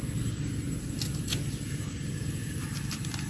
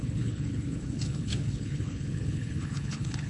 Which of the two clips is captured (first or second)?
first